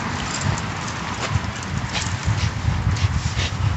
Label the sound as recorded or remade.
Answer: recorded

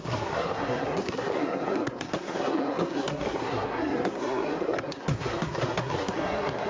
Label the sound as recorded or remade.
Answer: remade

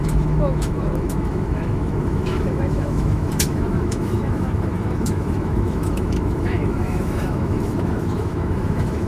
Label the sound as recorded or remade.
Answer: remade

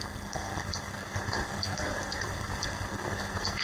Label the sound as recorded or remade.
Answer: remade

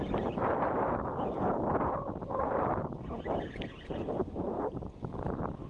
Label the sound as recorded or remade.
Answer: recorded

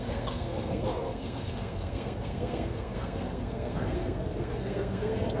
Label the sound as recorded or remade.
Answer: remade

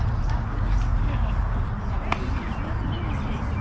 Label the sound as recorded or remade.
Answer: recorded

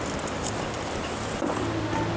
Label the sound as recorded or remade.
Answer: recorded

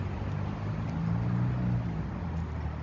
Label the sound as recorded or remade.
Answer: recorded